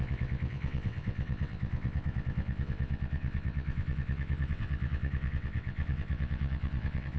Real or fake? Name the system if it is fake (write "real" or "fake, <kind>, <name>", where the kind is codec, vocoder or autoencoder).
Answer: fake, vocoder, WaveNeXt